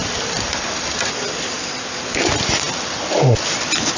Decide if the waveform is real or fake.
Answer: real